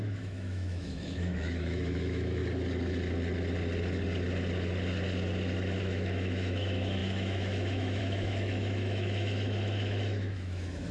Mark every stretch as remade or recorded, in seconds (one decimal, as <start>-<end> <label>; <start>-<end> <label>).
0.0-2.4 remade; 2.4-5.8 recorded; 5.8-10.9 remade